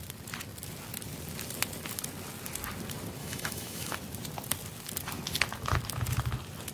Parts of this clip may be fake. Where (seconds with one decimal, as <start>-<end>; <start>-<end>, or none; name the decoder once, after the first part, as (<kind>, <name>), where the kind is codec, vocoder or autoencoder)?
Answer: 3.2-3.9 (autoencoder, DAC-VAE)